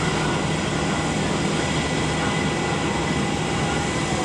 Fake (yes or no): no